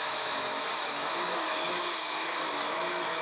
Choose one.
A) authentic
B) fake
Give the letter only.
B